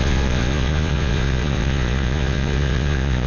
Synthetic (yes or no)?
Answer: yes